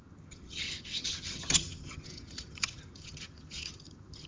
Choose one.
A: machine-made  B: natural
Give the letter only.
A